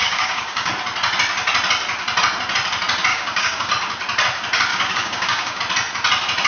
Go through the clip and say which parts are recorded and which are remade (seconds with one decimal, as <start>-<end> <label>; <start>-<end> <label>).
0.0-0.7 remade; 0.7-3.1 recorded; 3.1-3.7 remade; 3.7-4.7 recorded; 4.7-5.6 remade; 5.6-6.5 recorded